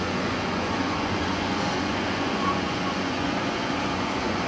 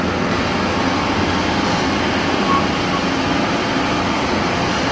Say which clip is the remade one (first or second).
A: first